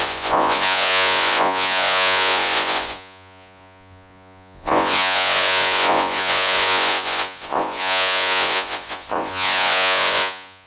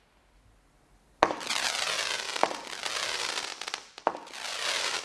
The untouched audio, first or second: second